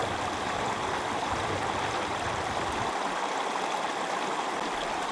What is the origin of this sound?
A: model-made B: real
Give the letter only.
B